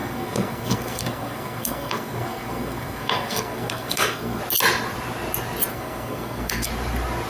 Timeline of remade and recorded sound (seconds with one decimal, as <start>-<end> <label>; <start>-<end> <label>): 0.0-4.4 remade; 4.4-5.7 recorded; 5.7-6.7 remade; 6.7-7.3 recorded